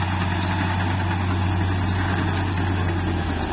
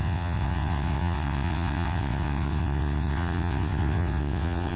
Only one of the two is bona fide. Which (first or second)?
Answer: first